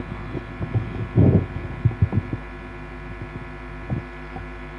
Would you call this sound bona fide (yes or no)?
yes